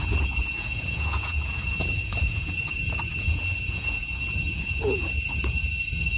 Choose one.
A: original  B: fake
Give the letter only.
B